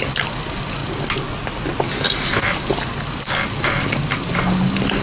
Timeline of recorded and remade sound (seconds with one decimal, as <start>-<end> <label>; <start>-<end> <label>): 0.0-5.0 recorded